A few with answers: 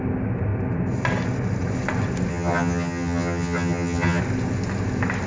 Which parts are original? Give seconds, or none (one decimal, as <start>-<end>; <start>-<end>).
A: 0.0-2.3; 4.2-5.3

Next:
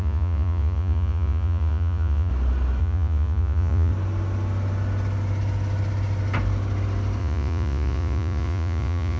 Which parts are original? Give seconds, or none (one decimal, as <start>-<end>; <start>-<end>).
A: 2.3-2.8; 3.9-7.2

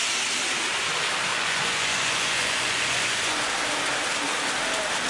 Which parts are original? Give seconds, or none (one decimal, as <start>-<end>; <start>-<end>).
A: 0.0-1.3; 3.5-5.1

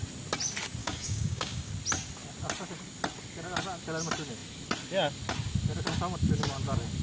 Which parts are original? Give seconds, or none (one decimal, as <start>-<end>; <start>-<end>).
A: 0.0-0.8; 1.7-7.0